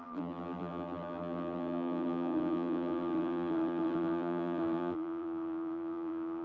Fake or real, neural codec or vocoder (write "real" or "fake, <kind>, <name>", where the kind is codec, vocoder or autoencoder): fake, vocoder, BigVGAN v2